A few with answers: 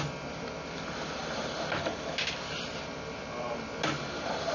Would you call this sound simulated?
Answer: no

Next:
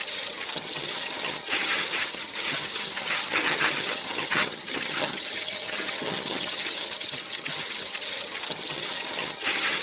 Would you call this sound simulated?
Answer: yes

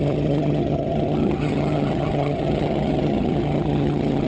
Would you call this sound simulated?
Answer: yes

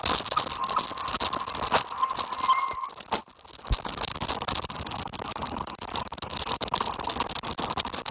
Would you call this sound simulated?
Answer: no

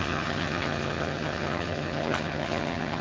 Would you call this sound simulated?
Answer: yes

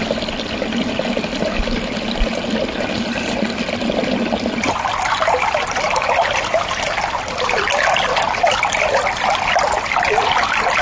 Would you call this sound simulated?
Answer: no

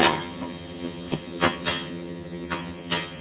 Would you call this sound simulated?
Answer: yes